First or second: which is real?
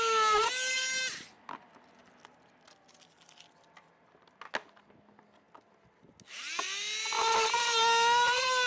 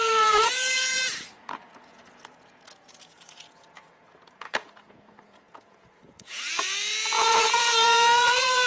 first